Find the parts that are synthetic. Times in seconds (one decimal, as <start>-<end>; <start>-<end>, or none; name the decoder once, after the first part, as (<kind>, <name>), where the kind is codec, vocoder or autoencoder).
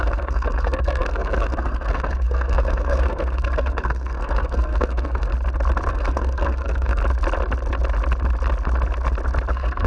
0.0-5.3 (codec, SNAC); 5.9-7.0; 9.5-9.9